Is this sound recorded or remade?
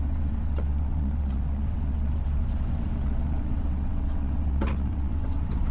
remade